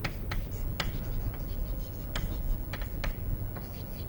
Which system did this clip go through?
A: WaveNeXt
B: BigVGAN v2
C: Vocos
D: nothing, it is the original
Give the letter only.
D